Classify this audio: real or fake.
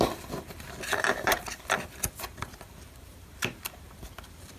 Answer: fake